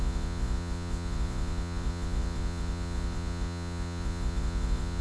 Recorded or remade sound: remade